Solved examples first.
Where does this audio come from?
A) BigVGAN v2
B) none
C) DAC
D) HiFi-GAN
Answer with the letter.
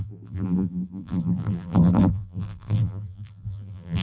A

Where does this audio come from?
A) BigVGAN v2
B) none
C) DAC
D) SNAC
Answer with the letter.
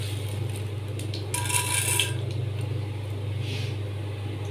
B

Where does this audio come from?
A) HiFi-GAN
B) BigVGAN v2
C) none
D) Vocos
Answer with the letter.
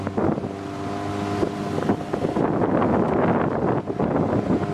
C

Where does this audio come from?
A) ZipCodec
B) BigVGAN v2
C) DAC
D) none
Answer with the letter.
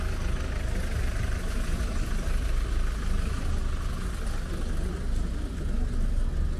D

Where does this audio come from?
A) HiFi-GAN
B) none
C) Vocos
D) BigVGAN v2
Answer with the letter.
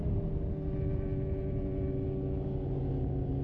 B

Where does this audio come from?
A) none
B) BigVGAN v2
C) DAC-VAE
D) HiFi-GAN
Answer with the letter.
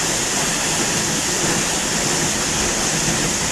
B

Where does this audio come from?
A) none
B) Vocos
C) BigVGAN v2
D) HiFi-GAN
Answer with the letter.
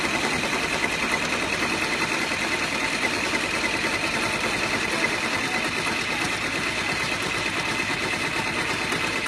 A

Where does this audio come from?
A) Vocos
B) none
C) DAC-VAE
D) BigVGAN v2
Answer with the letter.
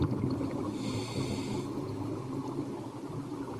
B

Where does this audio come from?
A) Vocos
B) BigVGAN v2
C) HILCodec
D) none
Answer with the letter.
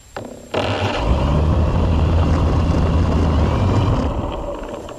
B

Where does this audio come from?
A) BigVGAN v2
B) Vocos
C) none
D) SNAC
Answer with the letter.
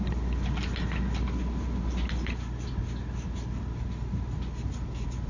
C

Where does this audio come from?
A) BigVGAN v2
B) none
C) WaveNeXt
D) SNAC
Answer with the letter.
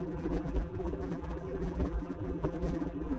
A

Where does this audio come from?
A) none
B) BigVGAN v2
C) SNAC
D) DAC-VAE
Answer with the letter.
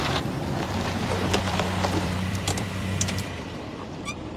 B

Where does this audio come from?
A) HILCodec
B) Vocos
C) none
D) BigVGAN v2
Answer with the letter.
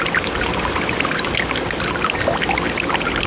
C